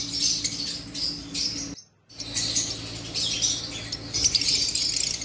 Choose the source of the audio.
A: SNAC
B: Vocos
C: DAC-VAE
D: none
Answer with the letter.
D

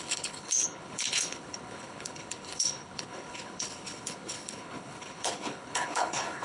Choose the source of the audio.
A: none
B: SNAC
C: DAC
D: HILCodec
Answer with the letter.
D